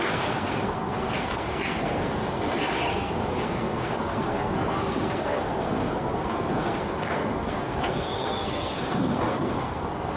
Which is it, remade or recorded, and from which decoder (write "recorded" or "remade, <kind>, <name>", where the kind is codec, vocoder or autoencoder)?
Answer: remade, codec, SNAC